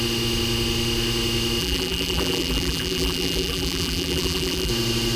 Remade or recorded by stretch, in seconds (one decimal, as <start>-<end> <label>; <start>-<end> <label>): 0.0-1.6 recorded; 1.6-4.7 remade; 4.7-5.2 recorded